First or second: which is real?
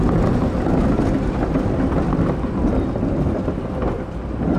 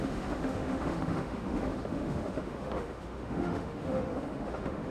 first